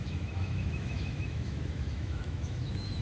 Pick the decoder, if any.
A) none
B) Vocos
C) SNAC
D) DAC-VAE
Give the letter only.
D